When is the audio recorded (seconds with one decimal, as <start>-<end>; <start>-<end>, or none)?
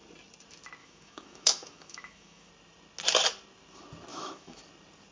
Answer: 0.0-0.8; 2.5-4.1; 4.6-5.1